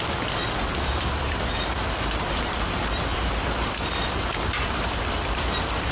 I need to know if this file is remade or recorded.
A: remade